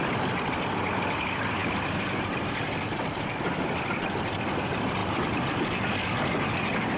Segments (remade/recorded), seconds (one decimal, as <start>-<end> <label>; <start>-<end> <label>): 0.0-7.0 remade